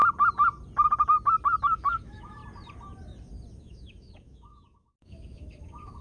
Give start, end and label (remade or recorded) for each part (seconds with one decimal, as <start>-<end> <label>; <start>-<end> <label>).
0.0-1.6 recorded; 1.6-2.4 remade; 2.4-3.6 recorded; 3.6-6.0 remade